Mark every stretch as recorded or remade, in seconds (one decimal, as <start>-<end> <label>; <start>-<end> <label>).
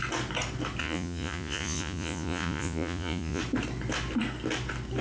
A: 0.0-0.8 recorded; 0.8-3.4 remade; 3.4-5.0 recorded